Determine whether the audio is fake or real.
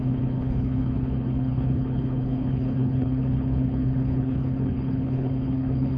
fake